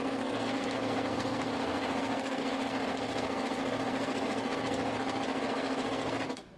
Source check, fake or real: fake